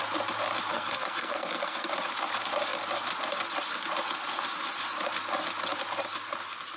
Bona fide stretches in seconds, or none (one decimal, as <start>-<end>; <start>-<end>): 0.0-0.7; 1.9-6.8